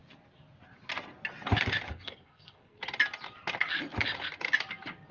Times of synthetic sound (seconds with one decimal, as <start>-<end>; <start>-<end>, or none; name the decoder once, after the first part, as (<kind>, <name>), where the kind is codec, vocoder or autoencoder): 1.9-2.8 (codec, SNAC)